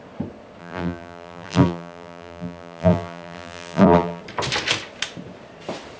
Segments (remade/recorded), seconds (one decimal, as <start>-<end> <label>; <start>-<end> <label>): 0.0-0.6 recorded; 0.6-4.2 remade; 4.2-6.0 recorded